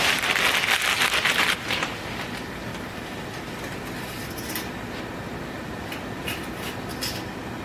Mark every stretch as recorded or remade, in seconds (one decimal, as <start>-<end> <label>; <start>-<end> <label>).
0.0-7.6 recorded

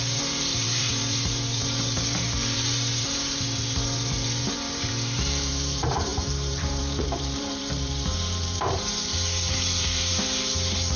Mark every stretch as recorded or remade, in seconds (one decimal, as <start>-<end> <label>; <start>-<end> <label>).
0.0-11.0 remade